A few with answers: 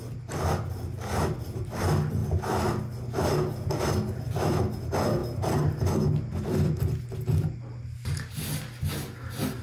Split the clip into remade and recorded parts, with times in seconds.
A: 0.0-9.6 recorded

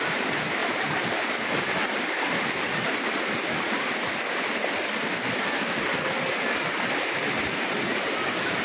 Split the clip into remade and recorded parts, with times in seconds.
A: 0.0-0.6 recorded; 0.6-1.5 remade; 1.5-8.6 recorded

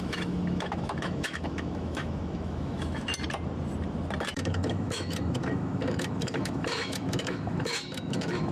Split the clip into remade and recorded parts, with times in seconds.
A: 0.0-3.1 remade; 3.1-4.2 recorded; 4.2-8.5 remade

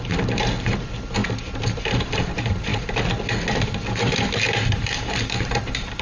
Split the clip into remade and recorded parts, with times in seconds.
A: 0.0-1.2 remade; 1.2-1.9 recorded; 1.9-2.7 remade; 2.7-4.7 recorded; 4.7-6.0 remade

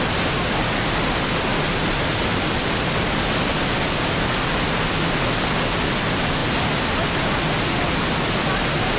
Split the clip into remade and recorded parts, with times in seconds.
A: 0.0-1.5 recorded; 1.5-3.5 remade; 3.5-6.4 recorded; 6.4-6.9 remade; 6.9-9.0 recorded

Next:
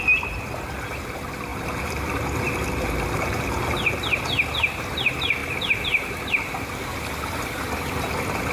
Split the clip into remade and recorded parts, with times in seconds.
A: 0.0-8.5 recorded